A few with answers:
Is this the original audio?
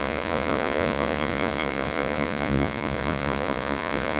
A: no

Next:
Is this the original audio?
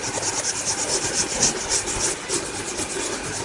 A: yes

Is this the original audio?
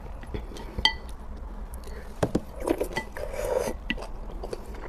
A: yes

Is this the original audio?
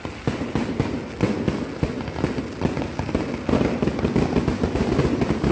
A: yes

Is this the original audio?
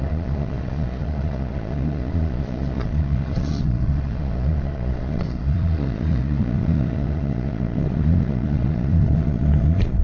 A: no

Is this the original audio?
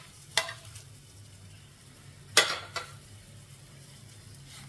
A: yes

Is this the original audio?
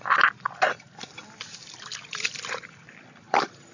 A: yes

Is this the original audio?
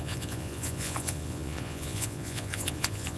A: no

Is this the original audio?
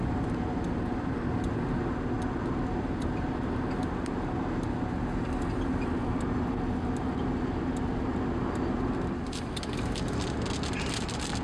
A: yes